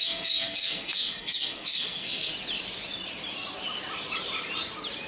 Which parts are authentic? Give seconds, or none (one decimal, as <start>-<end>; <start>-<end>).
2.3-5.1